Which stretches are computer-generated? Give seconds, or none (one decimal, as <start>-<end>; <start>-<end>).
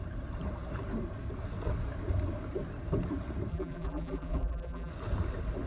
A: 3.5-4.9